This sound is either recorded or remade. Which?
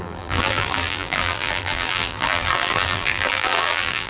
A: remade